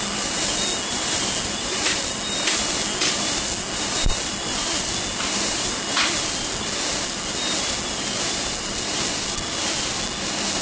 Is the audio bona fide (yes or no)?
yes